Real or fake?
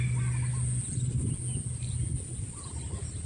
real